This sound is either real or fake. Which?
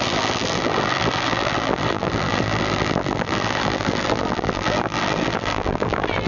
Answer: fake